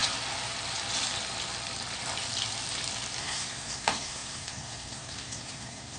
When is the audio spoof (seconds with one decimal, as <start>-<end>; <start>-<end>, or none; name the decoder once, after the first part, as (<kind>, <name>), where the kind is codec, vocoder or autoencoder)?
3.2-6.0 (codec, SNAC)